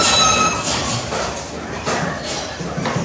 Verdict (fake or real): real